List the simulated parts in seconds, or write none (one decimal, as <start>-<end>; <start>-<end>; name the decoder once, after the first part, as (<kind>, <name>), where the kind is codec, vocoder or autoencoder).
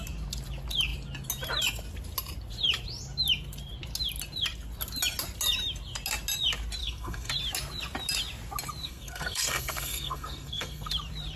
6.8-7.3 (codec, SNAC); 8.8-10.9